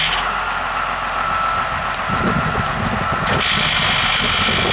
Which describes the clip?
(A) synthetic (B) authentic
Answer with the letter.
B